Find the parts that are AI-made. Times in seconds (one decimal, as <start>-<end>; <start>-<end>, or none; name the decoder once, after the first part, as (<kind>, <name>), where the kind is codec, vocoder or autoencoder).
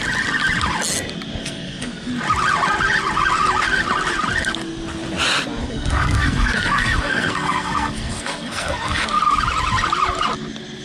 1.4-2.1 (codec, SNAC); 5.6-9.2